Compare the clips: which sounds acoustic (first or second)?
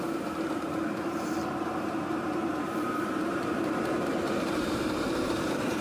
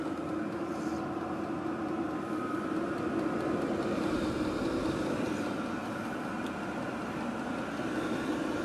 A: second